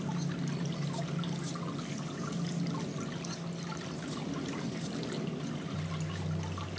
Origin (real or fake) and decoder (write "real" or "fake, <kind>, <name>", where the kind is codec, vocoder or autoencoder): real